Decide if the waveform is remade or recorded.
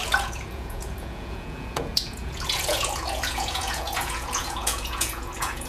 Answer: remade